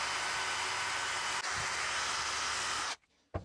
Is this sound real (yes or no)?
yes